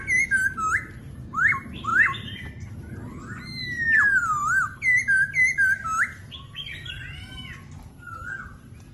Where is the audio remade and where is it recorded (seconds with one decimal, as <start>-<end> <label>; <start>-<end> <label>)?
0.0-8.9 recorded